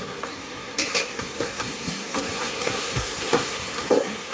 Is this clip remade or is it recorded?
remade